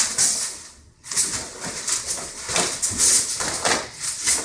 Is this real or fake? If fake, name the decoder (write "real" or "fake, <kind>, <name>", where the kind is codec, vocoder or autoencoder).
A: real